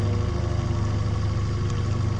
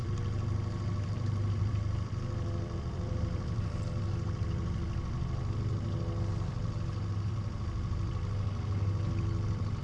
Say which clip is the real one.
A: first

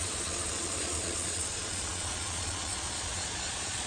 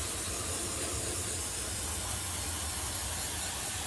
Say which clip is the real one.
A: second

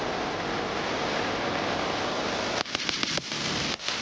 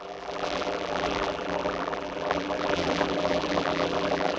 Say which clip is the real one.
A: first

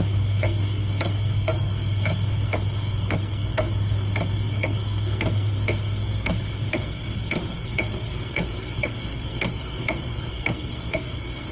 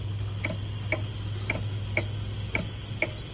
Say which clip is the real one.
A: second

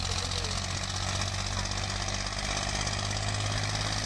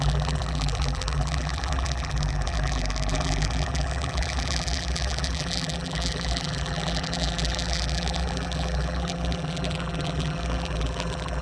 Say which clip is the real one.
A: first